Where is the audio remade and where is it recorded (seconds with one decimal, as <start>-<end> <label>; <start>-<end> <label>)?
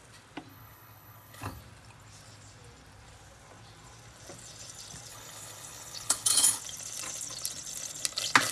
0.0-0.5 recorded; 0.5-1.6 remade; 1.6-5.1 recorded; 5.1-6.6 remade; 6.6-8.5 recorded